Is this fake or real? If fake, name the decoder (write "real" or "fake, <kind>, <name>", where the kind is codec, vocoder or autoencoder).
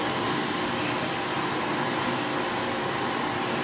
real